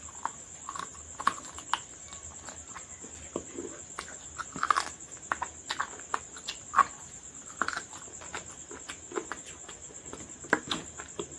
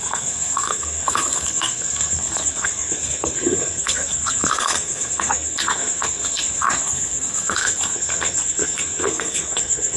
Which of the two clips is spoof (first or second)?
second